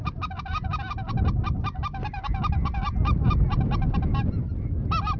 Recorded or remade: recorded